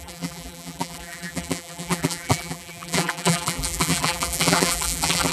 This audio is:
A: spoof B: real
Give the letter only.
A